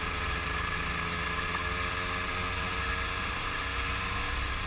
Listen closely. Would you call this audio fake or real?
real